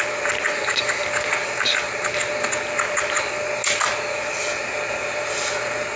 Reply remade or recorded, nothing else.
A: recorded